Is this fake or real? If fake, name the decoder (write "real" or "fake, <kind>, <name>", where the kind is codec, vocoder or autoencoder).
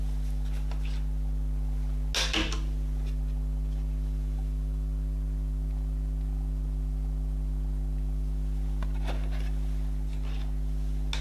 real